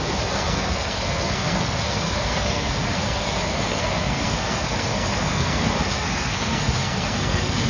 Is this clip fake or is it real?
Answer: fake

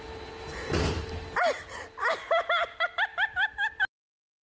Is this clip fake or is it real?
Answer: real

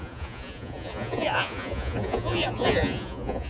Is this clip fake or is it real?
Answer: fake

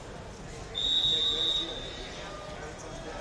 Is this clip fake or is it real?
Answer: real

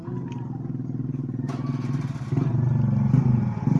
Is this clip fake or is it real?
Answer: real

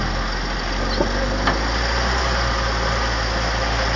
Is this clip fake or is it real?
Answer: real